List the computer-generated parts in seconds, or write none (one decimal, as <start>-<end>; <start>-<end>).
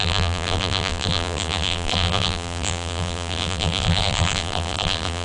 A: 0.0-5.2